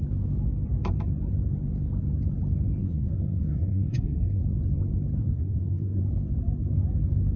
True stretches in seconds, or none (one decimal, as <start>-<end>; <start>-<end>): 0.0-2.8; 4.4-5.2; 6.0-7.4